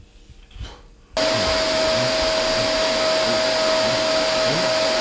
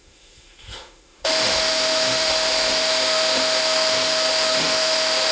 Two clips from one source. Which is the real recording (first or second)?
first